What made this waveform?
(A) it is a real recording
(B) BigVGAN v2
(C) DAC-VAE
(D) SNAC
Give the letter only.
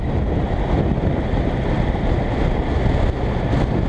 A